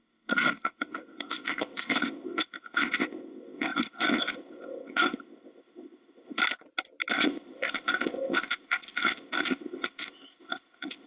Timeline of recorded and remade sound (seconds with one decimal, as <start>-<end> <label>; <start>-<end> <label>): 0.0-6.4 remade; 6.4-7.1 recorded; 7.1-11.1 remade